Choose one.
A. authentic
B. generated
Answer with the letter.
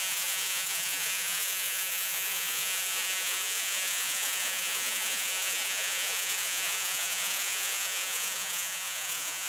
B